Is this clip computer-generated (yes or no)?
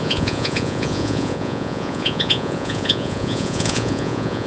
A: yes